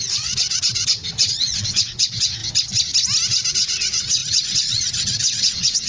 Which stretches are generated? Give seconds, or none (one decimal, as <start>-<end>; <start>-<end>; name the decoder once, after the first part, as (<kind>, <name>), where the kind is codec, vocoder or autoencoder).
0.0-2.4 (vocoder, WaveNeXt); 3.5-5.9